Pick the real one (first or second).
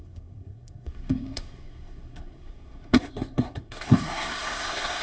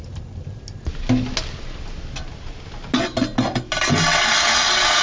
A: second